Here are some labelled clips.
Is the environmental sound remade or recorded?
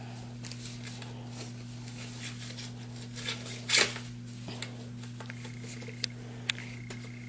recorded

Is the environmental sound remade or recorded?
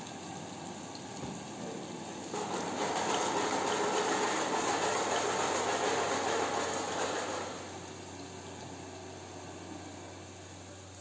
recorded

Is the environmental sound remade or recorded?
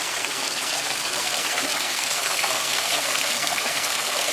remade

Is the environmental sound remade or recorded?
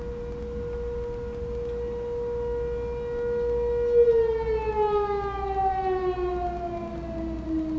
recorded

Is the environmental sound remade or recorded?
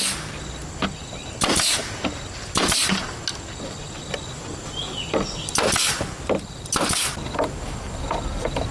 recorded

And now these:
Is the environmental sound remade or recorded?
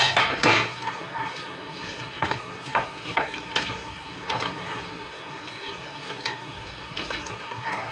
remade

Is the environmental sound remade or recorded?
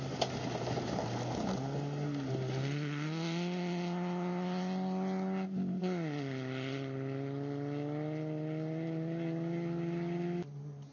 recorded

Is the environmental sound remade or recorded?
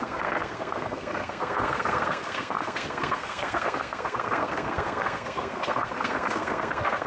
remade